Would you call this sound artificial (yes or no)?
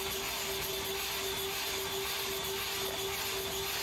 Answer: no